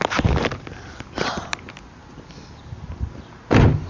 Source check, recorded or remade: recorded